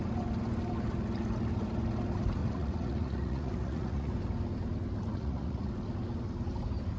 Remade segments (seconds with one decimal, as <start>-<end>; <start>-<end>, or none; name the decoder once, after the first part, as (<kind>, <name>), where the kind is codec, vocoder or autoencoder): 2.4-4.1 (vocoder, Vocos); 5.1-5.7

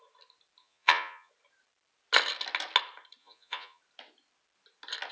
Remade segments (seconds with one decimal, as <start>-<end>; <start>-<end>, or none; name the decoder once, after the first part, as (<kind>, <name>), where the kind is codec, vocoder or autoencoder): 0.6-1.3 (vocoder, Vocos); 3.2-3.8

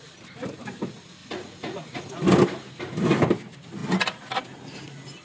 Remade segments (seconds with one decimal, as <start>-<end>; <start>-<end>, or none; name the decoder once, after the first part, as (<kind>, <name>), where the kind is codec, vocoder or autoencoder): 1.2-2.0 (vocoder, Vocos)

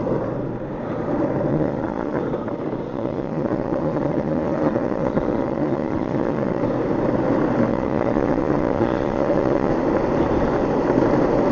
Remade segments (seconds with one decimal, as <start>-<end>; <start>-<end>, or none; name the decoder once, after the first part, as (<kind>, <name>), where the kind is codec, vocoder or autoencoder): 1.5-2.2 (vocoder, Vocos); 2.9-6.6; 7.7-9.7

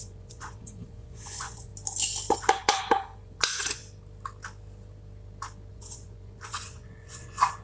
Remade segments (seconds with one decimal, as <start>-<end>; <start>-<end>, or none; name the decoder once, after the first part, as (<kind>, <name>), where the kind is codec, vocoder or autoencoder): 0.0-1.7 (vocoder, Vocos); 2.3-3.8; 5.7-7.6

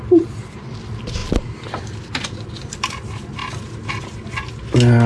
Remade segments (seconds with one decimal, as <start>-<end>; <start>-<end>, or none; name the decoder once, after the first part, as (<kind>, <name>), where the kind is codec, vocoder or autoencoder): none

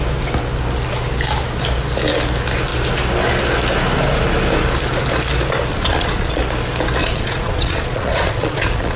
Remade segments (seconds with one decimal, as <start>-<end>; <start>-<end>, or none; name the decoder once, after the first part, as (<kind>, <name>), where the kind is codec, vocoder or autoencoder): 5.7-6.4 (vocoder, Vocos); 7.0-9.0